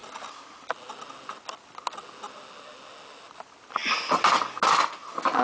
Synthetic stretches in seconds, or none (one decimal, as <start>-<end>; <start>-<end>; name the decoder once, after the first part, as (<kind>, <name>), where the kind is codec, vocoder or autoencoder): none

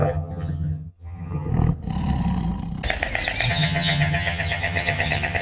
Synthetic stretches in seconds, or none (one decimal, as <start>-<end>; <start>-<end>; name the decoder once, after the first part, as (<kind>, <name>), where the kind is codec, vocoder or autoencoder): 0.0-1.5 (vocoder, HiFi-GAN); 3.5-5.4

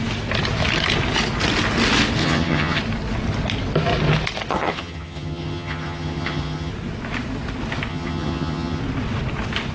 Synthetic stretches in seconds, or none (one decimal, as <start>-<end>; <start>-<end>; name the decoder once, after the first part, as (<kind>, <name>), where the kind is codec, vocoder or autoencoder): 2.2-2.8 (vocoder, HiFi-GAN); 4.5-6.7; 7.9-8.8

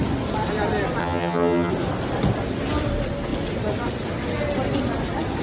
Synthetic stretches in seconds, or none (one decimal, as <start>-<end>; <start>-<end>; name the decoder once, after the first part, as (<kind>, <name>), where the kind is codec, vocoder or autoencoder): 1.0-1.7 (vocoder, HiFi-GAN)

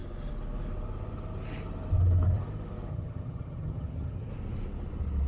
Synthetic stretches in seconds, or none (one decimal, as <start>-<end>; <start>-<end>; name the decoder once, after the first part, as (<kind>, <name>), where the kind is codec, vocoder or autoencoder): 2.9-4.3 (vocoder, HiFi-GAN)

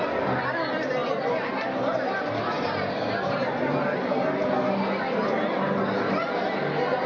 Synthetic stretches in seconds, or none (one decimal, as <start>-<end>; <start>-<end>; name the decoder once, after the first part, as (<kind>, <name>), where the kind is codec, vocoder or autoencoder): none